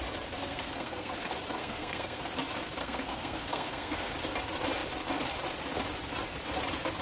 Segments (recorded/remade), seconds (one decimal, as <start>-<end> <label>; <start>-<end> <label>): 0.0-0.4 recorded; 0.4-1.1 remade; 1.1-1.6 recorded; 1.6-2.2 remade; 2.2-2.8 recorded; 2.8-4.1 remade; 4.1-7.0 recorded

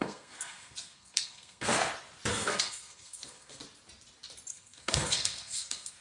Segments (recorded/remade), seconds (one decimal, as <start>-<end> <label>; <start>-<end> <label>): 0.0-1.9 remade; 1.9-2.3 recorded; 2.3-3.6 remade; 3.6-4.5 recorded; 4.5-6.0 remade

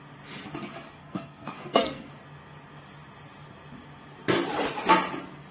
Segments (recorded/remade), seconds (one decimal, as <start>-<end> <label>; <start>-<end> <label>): 0.0-1.0 recorded; 1.0-2.1 remade; 2.1-5.5 recorded

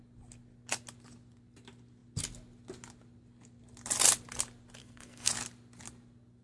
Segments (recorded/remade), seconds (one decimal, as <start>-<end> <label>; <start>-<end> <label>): 0.0-4.8 recorded; 4.8-5.3 remade; 5.3-6.4 recorded

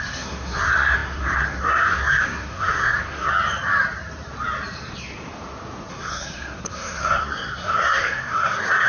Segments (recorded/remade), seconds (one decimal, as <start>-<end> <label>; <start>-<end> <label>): 0.0-3.3 remade; 3.3-5.9 recorded; 5.9-8.9 remade

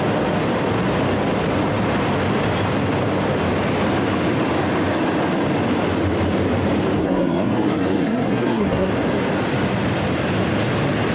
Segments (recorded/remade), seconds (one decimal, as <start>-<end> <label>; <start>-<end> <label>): 0.0-7.0 recorded; 7.0-8.9 remade; 8.9-11.1 recorded